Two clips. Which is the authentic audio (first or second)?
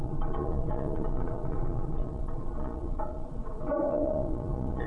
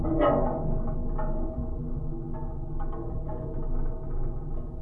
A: second